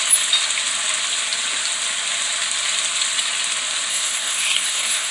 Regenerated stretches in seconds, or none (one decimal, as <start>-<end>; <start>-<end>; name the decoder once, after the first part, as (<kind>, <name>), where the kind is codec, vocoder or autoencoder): 3.9-5.1 (codec, SNAC)